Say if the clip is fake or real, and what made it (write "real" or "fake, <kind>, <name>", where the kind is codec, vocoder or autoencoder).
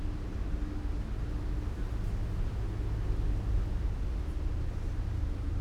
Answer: real